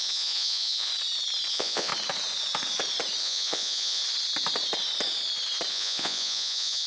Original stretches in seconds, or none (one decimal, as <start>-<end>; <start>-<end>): 0.9-1.5; 1.9-3.2; 4.0-5.7